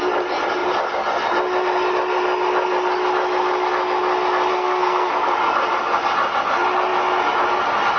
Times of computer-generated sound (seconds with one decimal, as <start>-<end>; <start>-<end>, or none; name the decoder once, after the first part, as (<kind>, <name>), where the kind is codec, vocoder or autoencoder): 4.5-5.1 (codec, SNAC)

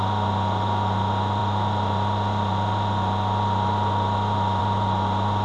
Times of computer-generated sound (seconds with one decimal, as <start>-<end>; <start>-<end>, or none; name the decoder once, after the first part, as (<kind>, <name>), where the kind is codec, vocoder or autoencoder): none

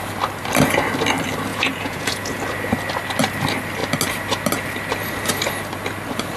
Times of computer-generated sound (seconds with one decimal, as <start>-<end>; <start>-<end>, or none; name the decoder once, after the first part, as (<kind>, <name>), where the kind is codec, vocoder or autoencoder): 1.5-2.4 (vocoder, Vocos)

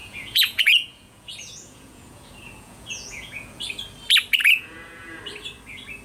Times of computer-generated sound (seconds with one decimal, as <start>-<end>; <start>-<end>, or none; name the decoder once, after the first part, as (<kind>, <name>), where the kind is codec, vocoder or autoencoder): 0.0-3.6 (vocoder, Vocos); 4.4-5.2